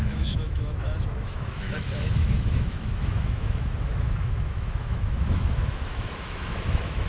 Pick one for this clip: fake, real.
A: fake